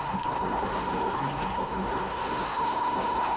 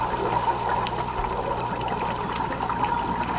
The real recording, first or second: second